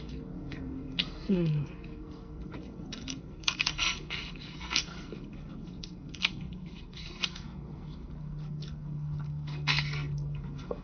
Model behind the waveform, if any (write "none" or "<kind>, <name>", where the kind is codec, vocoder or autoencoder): codec, SNAC